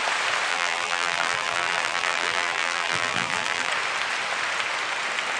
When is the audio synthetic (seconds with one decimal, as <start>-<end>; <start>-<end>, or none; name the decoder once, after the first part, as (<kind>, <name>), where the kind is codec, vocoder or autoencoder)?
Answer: 0.5-3.7 (vocoder, BigVGAN v2)